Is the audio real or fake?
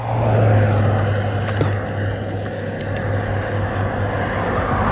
real